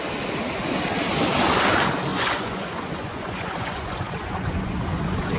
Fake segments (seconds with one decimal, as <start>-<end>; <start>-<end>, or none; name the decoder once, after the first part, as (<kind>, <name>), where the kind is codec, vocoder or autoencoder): 2.1-5.4 (vocoder, Vocos)